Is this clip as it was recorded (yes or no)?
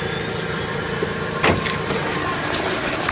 yes